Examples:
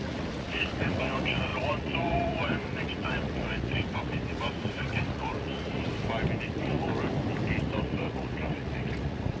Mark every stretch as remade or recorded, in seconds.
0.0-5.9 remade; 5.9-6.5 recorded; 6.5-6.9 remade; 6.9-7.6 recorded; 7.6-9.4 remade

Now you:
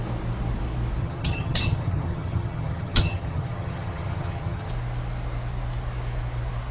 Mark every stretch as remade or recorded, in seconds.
0.0-1.0 recorded; 1.0-4.7 remade; 4.7-6.7 recorded

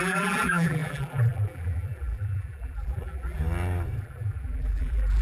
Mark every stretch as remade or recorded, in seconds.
0.0-3.4 remade; 3.4-4.0 recorded; 4.0-5.2 remade

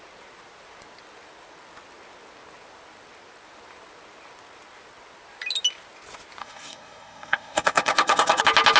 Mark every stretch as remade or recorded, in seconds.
0.0-6.4 recorded; 6.4-8.4 remade; 8.4-8.8 recorded

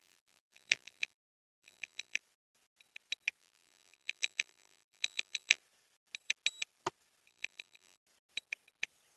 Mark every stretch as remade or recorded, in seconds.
0.0-2.2 remade; 2.2-3.4 recorded; 3.4-5.6 remade; 5.6-7.3 recorded; 7.3-8.0 remade; 8.0-9.2 recorded

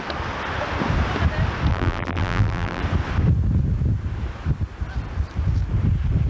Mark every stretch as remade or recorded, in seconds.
0.0-1.7 recorded; 1.7-2.8 remade; 2.8-6.3 recorded